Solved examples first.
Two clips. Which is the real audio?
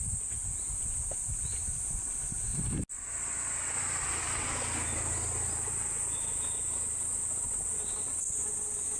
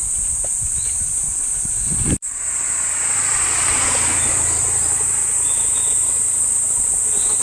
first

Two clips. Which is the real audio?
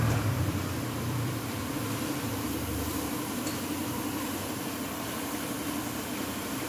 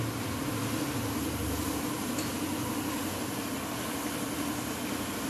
second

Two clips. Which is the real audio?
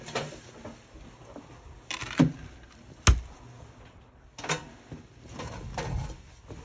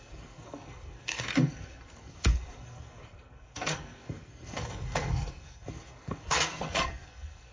first